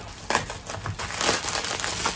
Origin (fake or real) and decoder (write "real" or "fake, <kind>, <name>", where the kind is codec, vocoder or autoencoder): real